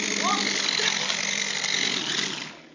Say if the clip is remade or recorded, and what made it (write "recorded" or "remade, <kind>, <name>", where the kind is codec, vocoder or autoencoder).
recorded